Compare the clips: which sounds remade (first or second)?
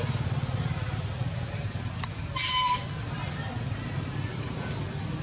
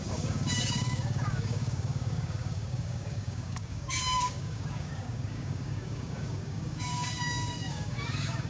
second